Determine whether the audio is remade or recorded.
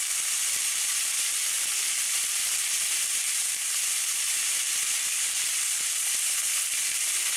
remade